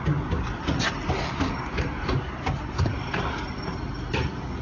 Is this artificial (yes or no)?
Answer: no